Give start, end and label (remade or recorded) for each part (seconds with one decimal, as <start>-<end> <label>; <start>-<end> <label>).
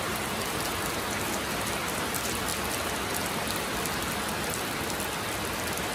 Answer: 0.0-5.9 recorded